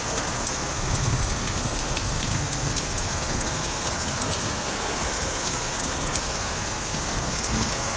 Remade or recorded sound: remade